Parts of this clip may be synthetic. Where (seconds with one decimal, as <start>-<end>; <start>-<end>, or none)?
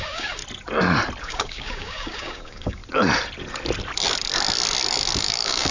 0.0-0.4; 1.2-2.8; 5.2-5.7